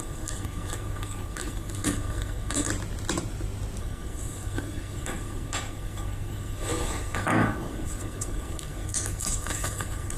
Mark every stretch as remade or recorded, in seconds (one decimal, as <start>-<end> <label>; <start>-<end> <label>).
0.0-2.7 remade; 2.7-3.8 recorded; 3.8-10.2 remade